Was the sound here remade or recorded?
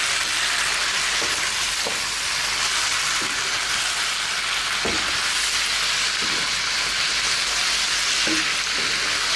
recorded